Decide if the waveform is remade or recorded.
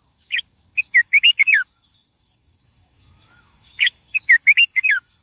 remade